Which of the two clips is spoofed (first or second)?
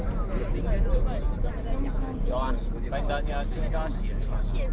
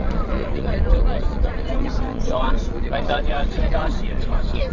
second